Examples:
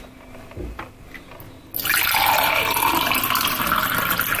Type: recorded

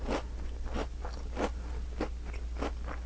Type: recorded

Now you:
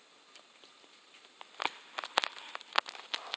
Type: recorded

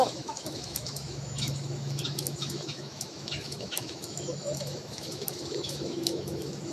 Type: remade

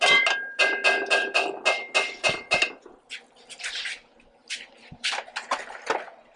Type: recorded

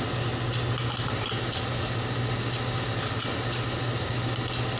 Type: recorded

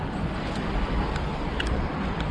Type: recorded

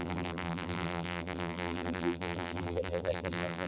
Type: remade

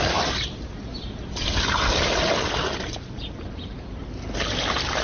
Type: recorded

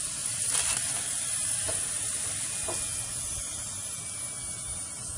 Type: recorded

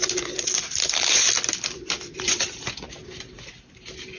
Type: recorded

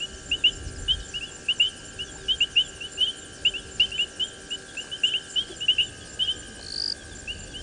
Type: recorded